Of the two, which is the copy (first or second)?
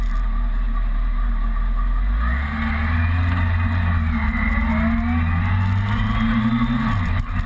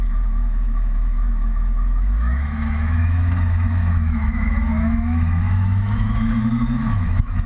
second